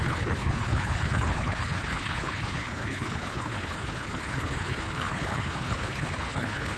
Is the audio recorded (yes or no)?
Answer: no